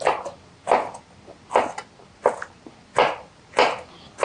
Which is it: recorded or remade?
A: recorded